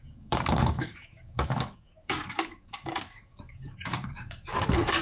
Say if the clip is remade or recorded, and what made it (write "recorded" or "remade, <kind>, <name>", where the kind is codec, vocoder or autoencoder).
remade, codec, DAC